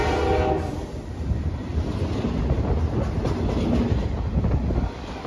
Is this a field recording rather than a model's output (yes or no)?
yes